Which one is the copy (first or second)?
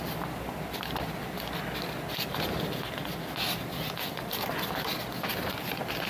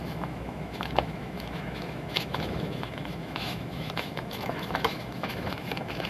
second